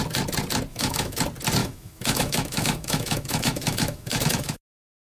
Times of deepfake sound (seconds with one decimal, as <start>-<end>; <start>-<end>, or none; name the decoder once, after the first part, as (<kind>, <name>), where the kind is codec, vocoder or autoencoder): 0.7-1.2 (autoencoder, DAC-VAE); 1.6-4.6